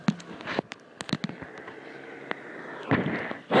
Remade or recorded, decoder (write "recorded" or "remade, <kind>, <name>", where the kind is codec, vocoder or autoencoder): recorded